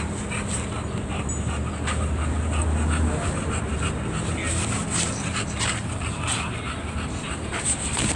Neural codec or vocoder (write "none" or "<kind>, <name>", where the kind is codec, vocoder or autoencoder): none